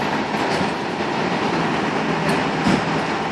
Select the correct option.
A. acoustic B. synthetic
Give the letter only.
A